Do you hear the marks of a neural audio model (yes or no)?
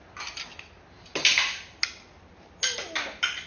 no